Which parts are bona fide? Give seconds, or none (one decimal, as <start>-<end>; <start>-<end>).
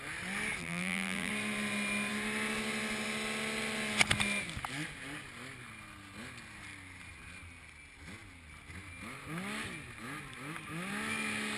0.0-0.6; 1.3-11.6